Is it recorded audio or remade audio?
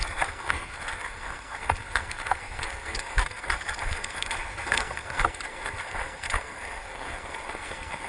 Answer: remade